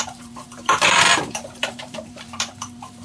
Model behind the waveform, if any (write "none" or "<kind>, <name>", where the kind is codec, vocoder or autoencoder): vocoder, BigVGAN v2